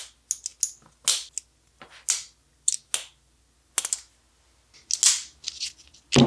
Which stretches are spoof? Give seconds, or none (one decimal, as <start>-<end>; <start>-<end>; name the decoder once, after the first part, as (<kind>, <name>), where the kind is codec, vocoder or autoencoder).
none